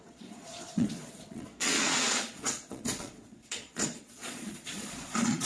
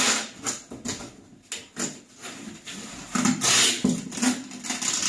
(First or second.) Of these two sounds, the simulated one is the first